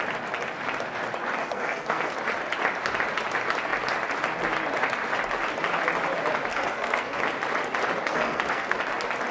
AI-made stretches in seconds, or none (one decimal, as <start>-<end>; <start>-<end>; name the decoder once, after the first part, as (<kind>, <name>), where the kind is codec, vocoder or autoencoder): 1.4-2.1 (codec, SNAC); 6.5-7.2; 8.1-8.8